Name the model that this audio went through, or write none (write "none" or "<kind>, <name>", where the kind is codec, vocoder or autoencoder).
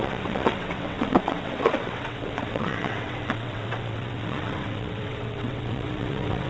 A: vocoder, WaveNeXt